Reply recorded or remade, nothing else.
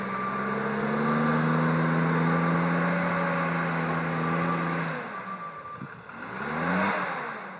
recorded